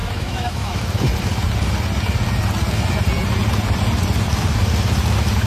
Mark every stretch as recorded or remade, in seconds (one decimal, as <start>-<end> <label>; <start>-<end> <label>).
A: 0.0-0.8 remade; 0.8-5.5 recorded